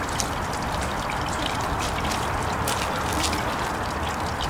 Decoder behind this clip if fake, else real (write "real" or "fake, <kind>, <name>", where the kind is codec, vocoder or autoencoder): real